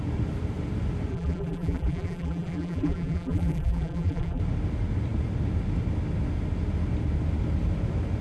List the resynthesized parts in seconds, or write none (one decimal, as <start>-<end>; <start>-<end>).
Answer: 1.1-4.4